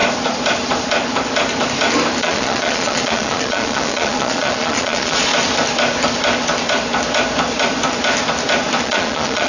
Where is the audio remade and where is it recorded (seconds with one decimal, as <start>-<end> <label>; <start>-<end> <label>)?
0.0-2.2 recorded; 2.2-5.3 remade; 5.3-8.8 recorded; 8.8-9.5 remade